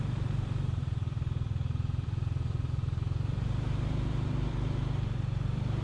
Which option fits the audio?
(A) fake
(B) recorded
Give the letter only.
A